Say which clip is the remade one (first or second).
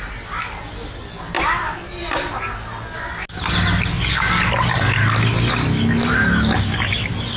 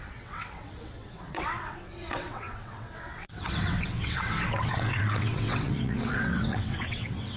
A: second